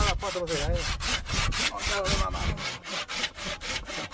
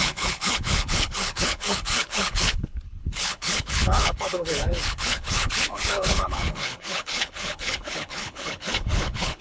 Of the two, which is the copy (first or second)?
second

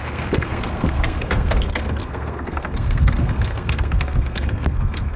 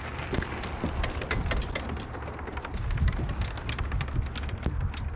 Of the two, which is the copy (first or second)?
first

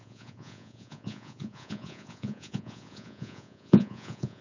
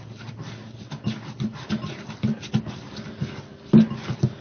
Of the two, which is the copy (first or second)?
first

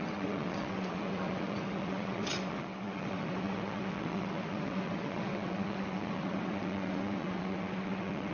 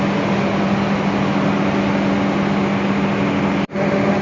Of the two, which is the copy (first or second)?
first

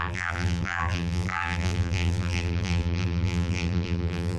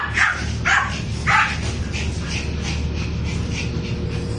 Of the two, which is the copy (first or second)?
first